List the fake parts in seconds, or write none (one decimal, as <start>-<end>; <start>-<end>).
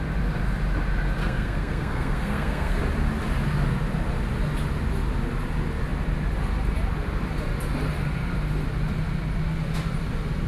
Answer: 1.2-2.8